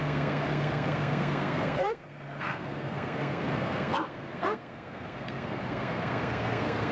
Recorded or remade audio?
remade